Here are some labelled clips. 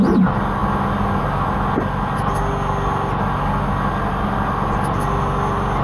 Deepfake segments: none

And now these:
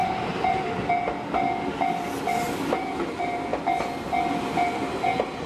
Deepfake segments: 0.0-0.5 (vocoder, BigVGAN v2)